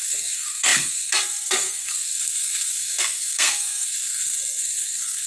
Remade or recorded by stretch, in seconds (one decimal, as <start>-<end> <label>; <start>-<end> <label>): 0.0-5.3 remade